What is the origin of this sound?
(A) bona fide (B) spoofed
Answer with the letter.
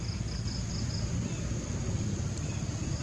A